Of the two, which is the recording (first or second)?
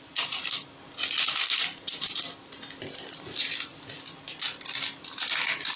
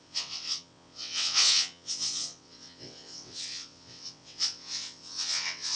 first